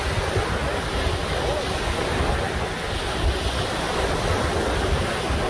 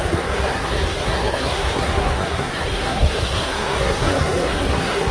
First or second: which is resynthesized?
second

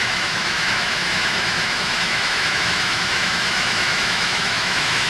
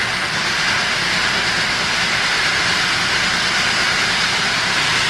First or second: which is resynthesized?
first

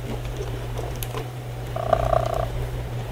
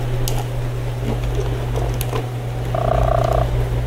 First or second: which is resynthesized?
first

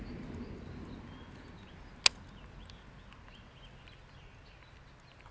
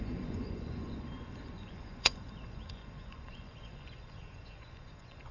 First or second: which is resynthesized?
second